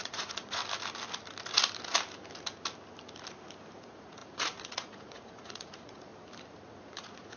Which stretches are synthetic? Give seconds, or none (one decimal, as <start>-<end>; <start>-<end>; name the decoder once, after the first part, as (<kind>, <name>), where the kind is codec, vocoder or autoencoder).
0.0-0.6 (vocoder, Vocos); 3.8-6.1; 6.7-7.4